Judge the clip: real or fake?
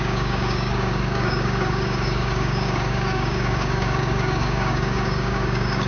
fake